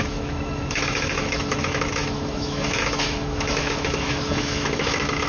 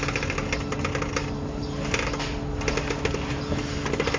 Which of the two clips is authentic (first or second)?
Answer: second